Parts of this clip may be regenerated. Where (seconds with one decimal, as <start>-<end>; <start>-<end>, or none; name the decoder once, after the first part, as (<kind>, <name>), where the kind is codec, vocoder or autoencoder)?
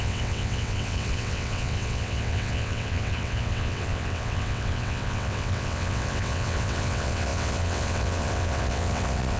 0.0-9.4 (vocoder, WaveNeXt)